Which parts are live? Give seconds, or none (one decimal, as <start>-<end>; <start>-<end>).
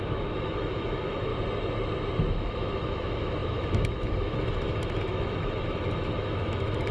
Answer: 1.3-2.3